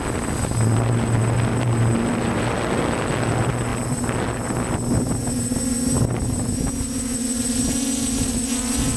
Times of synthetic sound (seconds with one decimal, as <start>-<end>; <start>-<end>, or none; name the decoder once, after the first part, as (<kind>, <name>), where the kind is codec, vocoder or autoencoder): none